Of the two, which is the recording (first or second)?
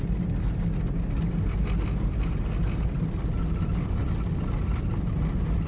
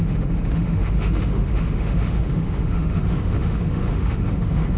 first